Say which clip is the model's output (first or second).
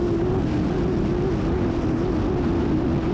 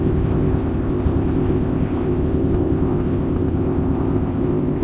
second